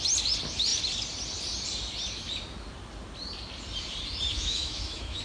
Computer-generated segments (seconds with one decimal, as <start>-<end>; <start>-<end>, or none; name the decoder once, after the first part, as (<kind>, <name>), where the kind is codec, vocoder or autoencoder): 4.3-5.2 (autoencoder, DAC-VAE)